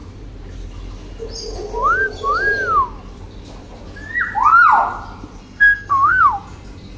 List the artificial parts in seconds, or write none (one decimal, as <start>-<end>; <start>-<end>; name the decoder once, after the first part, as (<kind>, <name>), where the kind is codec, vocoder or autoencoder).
5.4-6.2 (codec, SNAC)